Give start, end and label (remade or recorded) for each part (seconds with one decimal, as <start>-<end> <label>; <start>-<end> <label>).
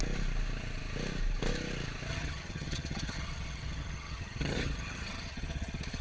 0.0-2.1 recorded; 2.1-6.0 remade